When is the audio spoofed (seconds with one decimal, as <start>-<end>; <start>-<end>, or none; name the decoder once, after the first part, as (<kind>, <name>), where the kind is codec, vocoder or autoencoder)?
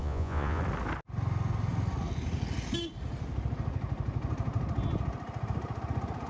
0.0-0.6 (vocoder, Vocos)